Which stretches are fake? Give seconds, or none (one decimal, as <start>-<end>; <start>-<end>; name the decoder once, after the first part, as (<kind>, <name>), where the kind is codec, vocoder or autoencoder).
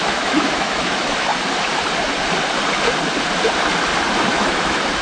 0.0-1.3 (autoencoder, DAC-VAE); 4.3-5.0